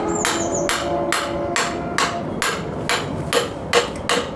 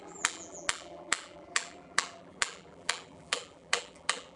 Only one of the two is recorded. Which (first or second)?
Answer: first